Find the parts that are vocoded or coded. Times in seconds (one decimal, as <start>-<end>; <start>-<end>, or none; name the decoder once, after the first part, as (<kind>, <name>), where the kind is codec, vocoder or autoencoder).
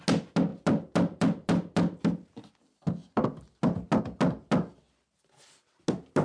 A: none